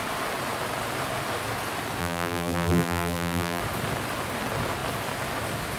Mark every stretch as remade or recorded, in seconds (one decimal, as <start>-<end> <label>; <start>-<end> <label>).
0.0-2.0 recorded; 2.0-3.6 remade; 3.6-5.8 recorded